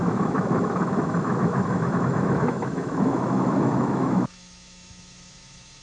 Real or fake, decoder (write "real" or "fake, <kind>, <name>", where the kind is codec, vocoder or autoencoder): fake, autoencoder, DAC-VAE